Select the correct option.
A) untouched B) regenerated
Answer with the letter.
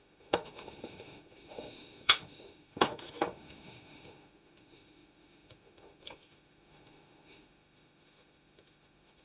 B